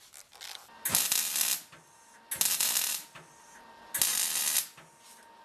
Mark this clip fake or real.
real